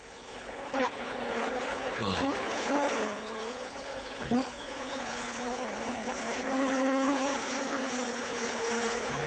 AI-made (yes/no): yes